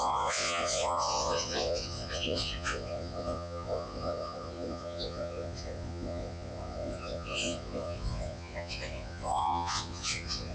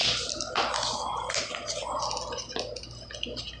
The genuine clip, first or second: second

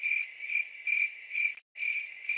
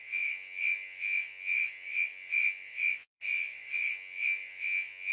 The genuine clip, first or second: first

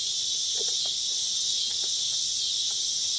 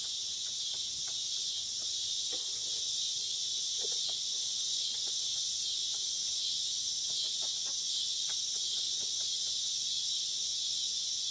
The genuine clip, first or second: first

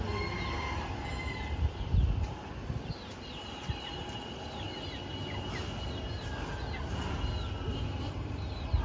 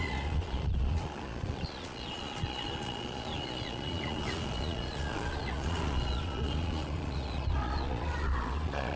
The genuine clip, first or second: first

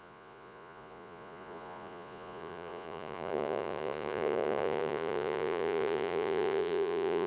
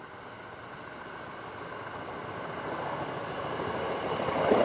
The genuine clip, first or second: second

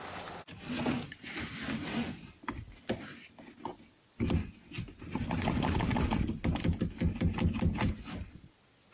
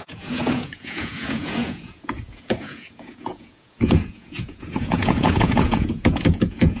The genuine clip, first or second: first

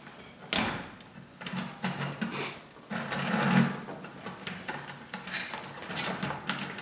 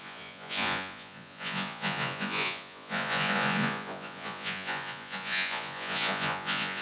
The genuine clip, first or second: first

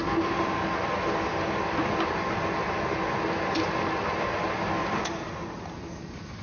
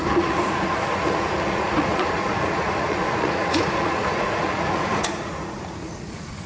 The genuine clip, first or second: first